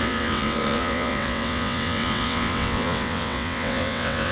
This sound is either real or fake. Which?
fake